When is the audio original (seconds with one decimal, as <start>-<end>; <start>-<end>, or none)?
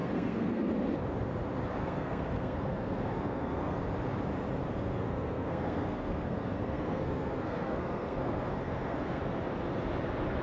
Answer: 0.7-1.8; 3.8-4.7; 9.2-10.4